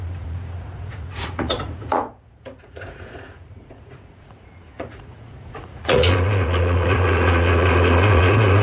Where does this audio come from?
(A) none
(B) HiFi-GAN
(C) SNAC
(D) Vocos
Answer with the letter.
D